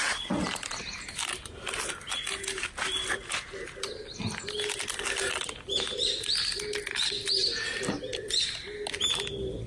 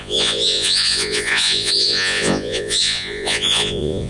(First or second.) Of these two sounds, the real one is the first